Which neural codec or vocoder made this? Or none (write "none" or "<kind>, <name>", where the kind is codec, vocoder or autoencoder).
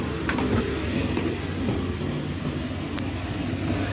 none